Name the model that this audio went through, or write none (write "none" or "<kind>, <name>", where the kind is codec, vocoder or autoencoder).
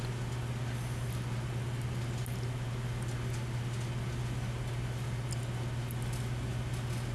none